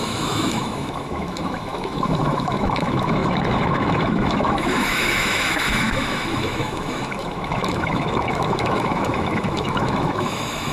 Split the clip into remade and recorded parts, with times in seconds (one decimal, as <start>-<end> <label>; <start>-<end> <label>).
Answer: 0.0-10.7 remade